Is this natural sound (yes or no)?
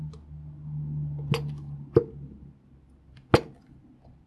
yes